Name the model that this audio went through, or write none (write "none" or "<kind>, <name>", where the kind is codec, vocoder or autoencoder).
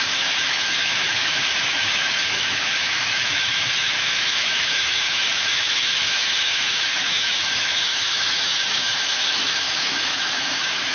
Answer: autoencoder, DAC-VAE